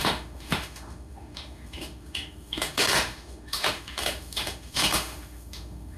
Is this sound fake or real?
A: fake